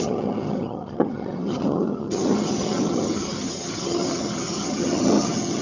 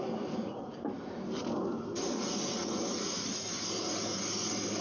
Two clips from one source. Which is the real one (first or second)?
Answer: second